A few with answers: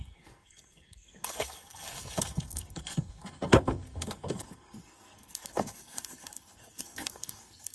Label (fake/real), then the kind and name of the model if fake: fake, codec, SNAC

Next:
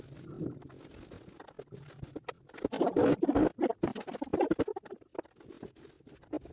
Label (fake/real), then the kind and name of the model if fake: real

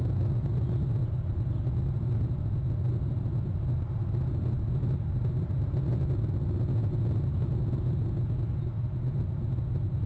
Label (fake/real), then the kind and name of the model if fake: real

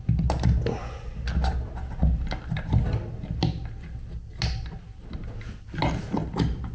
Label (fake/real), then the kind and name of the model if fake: real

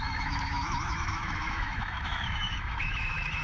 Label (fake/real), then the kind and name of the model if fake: fake, autoencoder, DAC-VAE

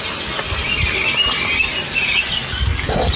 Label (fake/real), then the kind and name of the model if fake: real